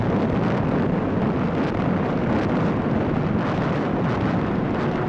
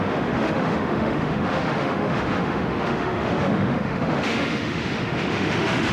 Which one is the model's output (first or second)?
second